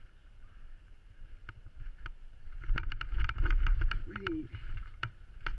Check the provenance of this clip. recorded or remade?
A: remade